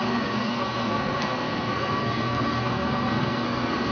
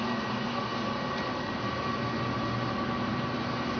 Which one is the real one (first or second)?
second